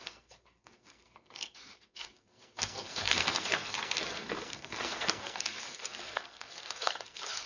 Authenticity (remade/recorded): remade